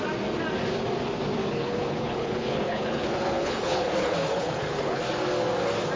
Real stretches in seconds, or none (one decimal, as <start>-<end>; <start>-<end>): 0.0-1.4; 5.0-6.0